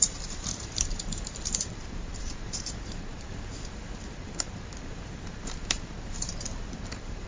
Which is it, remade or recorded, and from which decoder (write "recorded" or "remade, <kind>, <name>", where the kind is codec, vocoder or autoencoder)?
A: remade, vocoder, BigVGAN v2